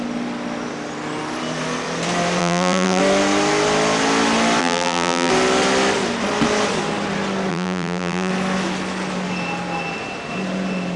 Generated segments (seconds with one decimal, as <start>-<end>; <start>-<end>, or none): 2.4-3.0; 4.6-5.3; 7.5-8.3